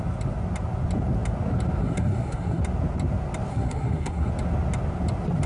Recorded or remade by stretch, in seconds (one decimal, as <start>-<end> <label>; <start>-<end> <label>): 0.0-1.8 recorded; 1.8-2.6 remade; 2.6-3.5 recorded; 3.5-4.3 remade; 4.3-5.5 recorded